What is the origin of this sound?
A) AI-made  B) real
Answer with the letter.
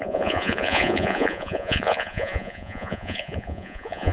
A